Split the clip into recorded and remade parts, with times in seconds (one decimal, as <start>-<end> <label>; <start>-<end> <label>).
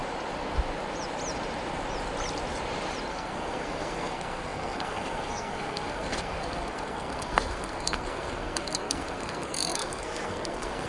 0.0-3.1 recorded; 3.1-10.9 remade